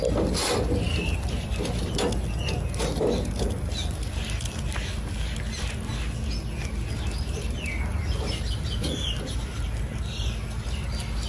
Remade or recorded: recorded